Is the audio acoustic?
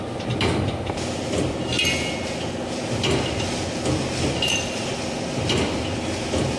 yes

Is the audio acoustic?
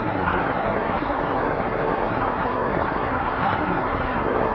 no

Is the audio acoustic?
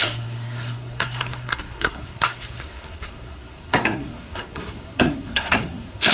no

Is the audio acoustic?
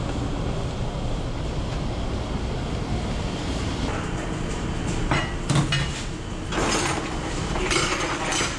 yes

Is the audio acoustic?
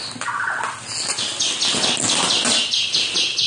yes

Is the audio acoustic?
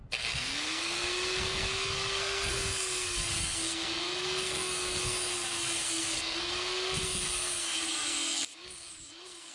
no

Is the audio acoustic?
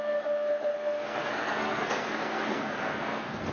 no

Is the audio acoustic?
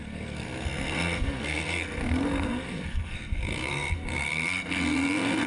no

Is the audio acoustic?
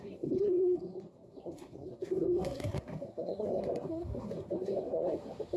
no